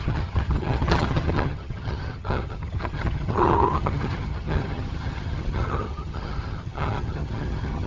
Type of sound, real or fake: fake